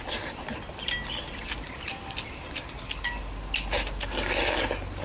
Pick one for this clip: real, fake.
real